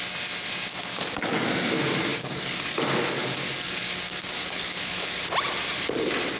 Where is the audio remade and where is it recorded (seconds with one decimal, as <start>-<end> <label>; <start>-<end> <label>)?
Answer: 0.0-0.9 recorded; 0.9-1.5 remade; 1.5-2.1 recorded; 2.1-5.2 remade; 5.2-6.4 recorded